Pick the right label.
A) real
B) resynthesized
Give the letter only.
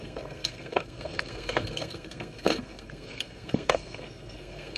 B